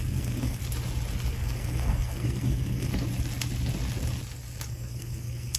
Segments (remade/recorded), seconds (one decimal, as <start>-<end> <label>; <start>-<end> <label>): 0.0-0.6 remade; 0.6-1.3 recorded; 1.3-2.9 remade; 2.9-4.7 recorded; 4.7-5.6 remade